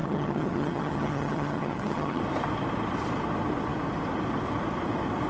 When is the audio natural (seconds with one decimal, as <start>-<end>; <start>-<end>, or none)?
2.2-5.3